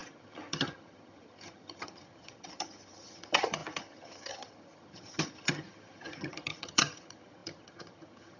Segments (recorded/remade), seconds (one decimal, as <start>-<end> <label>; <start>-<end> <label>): 0.0-8.4 remade